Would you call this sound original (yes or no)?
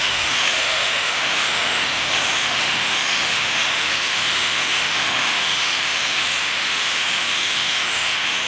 no